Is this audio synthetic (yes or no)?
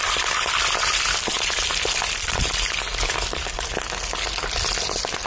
no